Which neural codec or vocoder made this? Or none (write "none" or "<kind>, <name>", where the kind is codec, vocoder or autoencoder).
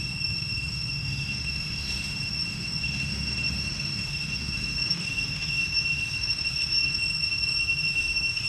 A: autoencoder, DAC-VAE